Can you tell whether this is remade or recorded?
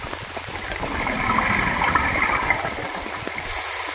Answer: recorded